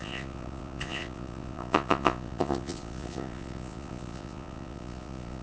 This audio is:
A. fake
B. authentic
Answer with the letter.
A